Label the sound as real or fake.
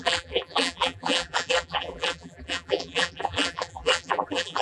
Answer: fake